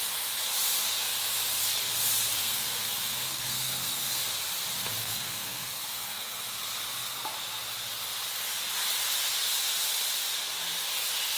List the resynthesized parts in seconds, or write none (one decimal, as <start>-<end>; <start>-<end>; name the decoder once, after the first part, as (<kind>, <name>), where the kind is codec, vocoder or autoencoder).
2.3-4.2 (codec, SNAC); 5.0-6.4